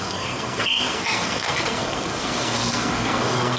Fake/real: fake